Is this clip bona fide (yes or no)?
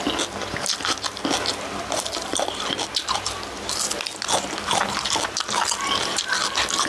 yes